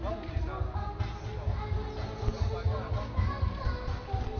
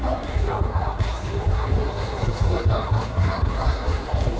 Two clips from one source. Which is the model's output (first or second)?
second